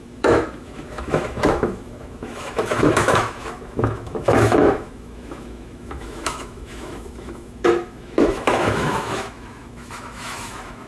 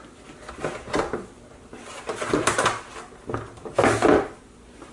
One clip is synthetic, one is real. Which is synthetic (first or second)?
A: first